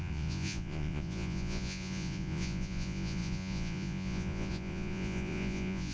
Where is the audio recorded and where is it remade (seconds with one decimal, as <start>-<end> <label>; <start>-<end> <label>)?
0.0-5.9 remade